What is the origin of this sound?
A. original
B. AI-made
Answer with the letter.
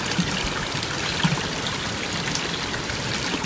A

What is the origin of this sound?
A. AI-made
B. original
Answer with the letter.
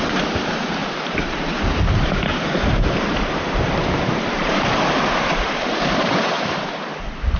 A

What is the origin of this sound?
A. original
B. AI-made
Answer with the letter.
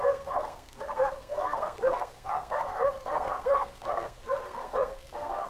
B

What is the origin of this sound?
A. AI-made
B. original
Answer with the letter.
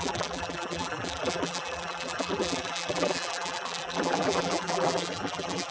A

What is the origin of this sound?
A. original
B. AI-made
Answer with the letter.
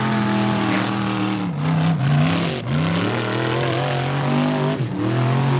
A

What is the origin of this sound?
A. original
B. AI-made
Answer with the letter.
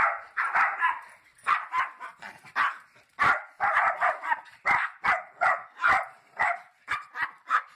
B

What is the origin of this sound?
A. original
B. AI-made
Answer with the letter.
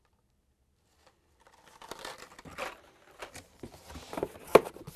A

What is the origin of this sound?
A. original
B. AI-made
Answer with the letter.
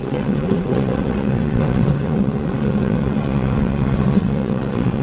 B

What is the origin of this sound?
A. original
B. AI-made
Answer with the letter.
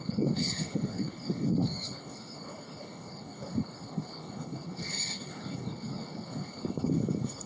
B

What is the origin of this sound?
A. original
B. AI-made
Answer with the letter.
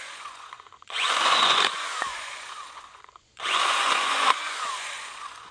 B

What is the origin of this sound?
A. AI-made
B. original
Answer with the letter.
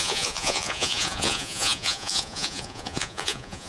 A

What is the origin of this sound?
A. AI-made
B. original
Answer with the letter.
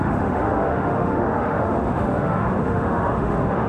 A